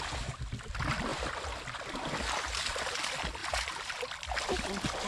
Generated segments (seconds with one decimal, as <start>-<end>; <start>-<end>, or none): 1.1-1.6; 3.4-4.0